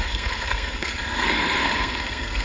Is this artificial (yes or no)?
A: yes